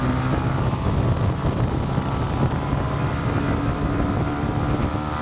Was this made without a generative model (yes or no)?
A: yes